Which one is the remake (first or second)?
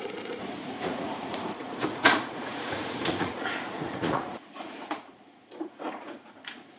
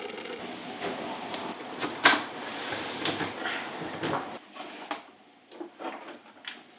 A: first